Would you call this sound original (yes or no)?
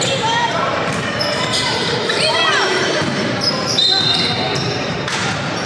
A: no